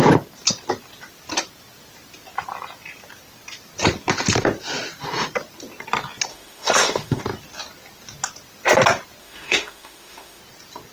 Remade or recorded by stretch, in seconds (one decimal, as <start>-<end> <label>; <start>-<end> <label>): 0.0-6.3 recorded; 6.3-7.2 remade; 7.2-9.2 recorded; 9.2-10.4 remade; 10.4-10.9 recorded